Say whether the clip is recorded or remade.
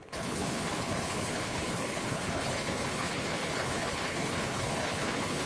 remade